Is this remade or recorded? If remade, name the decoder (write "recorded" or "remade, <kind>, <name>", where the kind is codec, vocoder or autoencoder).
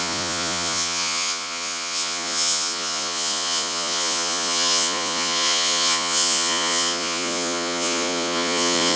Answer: remade, vocoder, Vocos